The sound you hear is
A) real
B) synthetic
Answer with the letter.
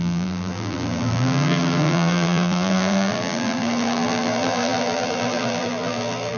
B